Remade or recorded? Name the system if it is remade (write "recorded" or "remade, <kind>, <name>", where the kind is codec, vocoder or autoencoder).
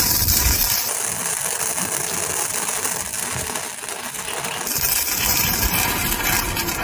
recorded